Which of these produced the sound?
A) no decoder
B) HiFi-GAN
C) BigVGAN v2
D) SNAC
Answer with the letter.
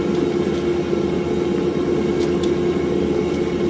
A